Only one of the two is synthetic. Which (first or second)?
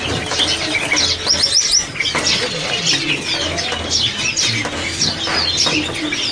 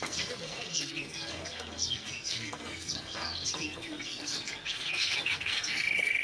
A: second